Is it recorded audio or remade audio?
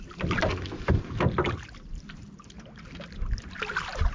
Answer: recorded